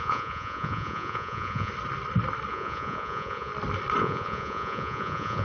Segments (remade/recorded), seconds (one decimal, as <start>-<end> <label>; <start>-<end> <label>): 0.0-1.7 remade; 1.7-2.5 recorded; 2.5-3.5 remade; 3.5-4.0 recorded; 4.0-5.4 remade